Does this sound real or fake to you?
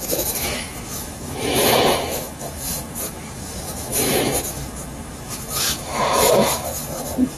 fake